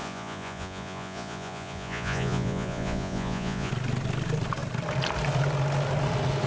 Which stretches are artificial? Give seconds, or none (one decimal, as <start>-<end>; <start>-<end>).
0.0-3.7